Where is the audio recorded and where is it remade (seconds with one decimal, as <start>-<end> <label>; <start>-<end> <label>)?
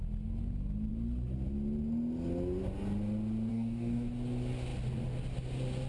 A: 0.0-3.5 recorded; 3.5-4.1 remade; 4.1-5.9 recorded